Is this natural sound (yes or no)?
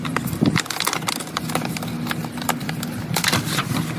yes